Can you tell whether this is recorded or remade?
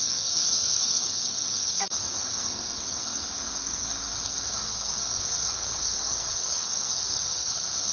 remade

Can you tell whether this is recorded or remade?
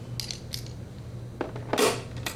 recorded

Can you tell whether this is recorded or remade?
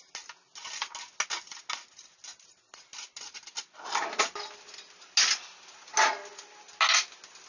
recorded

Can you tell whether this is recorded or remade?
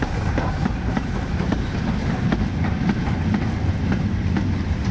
recorded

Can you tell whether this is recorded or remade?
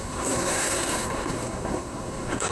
remade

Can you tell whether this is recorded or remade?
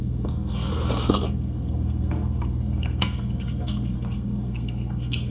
remade